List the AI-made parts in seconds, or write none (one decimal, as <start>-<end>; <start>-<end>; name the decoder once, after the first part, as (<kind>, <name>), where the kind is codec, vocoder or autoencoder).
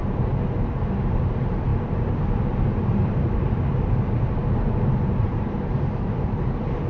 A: 0.5-4.4 (vocoder, BigVGAN v2); 5.1-6.9